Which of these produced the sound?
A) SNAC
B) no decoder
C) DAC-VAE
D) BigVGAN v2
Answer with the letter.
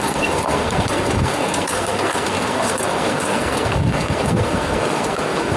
A